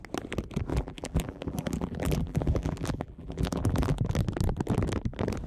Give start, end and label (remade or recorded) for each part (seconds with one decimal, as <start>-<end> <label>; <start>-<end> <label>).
0.0-0.7 recorded; 0.7-4.0 remade; 4.0-5.5 recorded